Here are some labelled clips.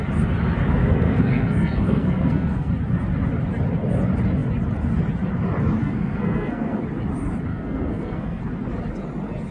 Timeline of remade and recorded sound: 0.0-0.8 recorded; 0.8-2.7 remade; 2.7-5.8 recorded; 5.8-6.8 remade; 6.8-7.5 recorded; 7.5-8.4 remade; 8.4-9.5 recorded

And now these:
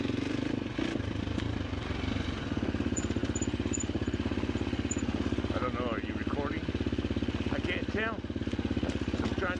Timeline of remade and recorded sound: 0.0-9.6 recorded

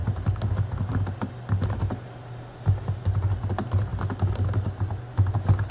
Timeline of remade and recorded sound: 0.0-5.7 recorded

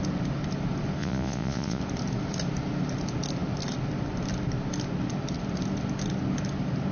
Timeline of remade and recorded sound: 0.0-1.0 recorded; 1.0-1.8 remade; 1.8-6.9 recorded

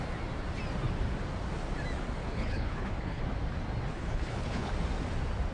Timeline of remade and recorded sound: 0.0-2.2 recorded; 2.2-3.2 remade; 3.2-3.9 recorded; 3.9-4.7 remade; 4.7-5.5 recorded

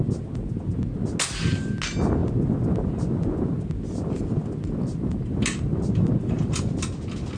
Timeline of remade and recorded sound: 0.0-7.4 recorded